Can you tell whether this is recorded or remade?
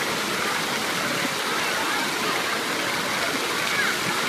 recorded